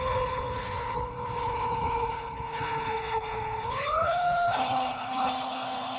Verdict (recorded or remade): remade